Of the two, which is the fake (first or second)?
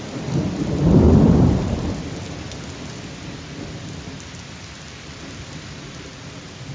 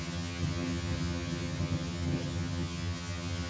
second